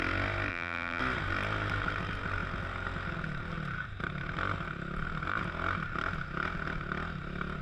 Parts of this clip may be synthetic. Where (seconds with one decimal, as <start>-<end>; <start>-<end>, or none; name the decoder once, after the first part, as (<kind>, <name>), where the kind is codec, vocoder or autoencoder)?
0.5-1.0 (vocoder, BigVGAN v2)